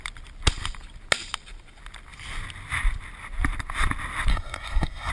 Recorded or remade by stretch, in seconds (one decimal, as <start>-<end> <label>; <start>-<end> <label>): 0.0-4.3 recorded; 4.3-5.1 remade